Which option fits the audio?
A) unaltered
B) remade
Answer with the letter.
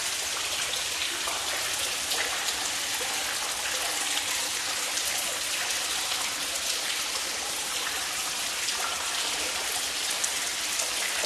A